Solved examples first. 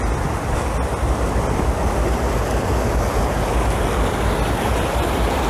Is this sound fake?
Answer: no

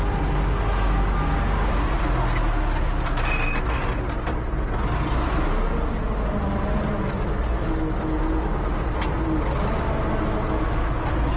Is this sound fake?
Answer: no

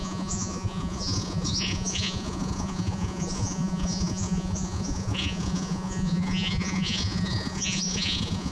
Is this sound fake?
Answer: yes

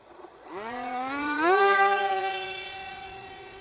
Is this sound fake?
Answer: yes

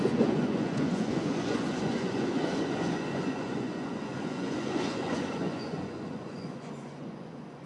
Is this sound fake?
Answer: yes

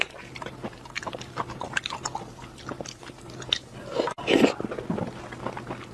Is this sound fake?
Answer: no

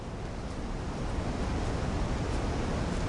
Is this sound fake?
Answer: no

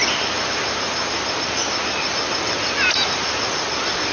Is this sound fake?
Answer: no